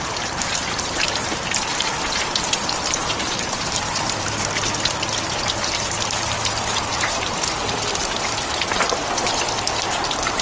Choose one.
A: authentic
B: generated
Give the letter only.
B